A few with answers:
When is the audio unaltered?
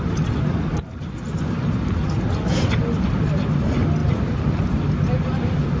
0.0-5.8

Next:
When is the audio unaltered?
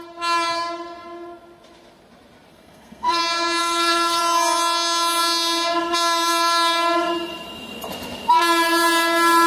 0.0-2.5; 3.2-3.6; 4.2-9.5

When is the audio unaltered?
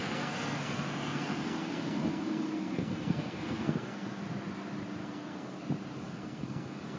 4.2-5.0; 5.6-6.0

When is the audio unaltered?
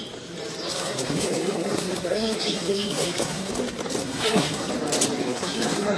0.0-0.7; 3.5-4.0; 4.7-5.2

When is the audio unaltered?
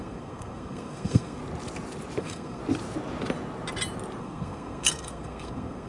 1.4-2.2; 2.6-4.2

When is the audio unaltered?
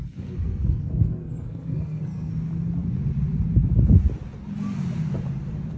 2.3-5.8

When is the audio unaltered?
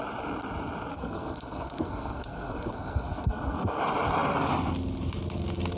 0.0-0.9; 3.8-5.8